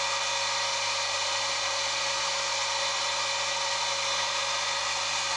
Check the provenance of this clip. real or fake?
real